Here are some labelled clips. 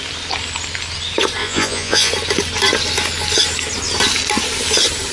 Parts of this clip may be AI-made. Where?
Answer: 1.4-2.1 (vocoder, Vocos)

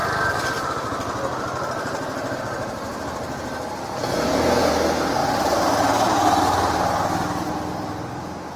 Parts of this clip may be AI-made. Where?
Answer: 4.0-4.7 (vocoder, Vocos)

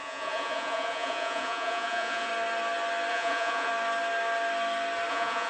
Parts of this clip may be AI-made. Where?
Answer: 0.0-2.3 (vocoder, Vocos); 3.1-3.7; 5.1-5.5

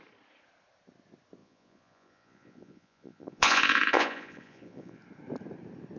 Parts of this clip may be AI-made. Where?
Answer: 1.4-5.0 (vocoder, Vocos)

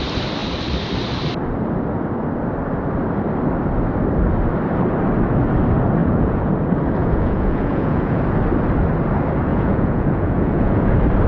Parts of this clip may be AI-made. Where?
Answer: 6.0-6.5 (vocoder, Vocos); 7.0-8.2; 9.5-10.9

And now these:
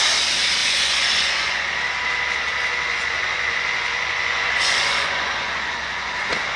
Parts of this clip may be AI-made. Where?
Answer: 0.6-1.6 (vocoder, Vocos); 2.9-6.6

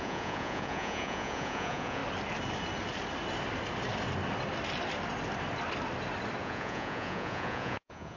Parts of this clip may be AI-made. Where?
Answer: 0.0-2.0 (vocoder, Vocos); 6.4-8.2

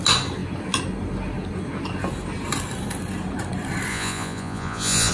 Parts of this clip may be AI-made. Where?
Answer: 3.9-5.1 (vocoder, Vocos)